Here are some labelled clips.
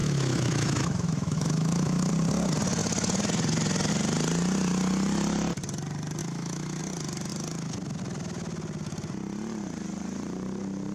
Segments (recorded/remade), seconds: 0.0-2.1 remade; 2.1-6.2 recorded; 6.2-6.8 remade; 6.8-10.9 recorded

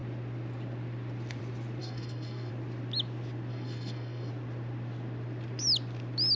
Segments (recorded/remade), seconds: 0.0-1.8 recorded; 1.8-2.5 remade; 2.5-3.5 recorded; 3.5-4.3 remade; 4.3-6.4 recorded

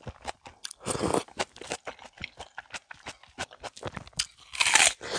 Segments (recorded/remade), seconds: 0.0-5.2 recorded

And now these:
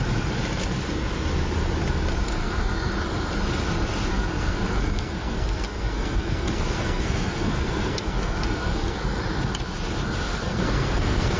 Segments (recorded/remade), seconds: 0.0-2.4 recorded; 2.4-2.9 remade; 2.9-4.1 recorded; 4.1-9.2 remade; 9.2-10.3 recorded; 10.3-11.4 remade